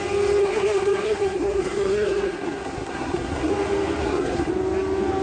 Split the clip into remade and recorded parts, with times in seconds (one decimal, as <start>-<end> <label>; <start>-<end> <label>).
0.0-0.4 recorded; 0.4-3.5 remade; 3.5-4.0 recorded; 4.0-4.5 remade; 4.5-5.2 recorded